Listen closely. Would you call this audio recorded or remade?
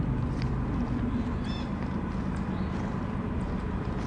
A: recorded